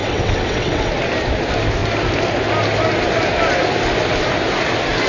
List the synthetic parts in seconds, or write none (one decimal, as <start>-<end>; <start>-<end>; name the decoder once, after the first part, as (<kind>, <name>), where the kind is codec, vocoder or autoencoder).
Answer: 0.0-0.9 (vocoder, WaveNeXt)